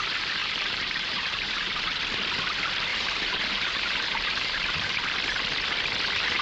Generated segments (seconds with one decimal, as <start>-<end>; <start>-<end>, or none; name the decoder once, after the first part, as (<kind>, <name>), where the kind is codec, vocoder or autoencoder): 0.4-2.0 (vocoder, BigVGAN v2); 2.9-5.0